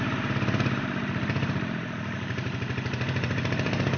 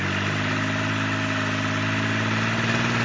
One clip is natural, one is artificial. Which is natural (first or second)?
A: second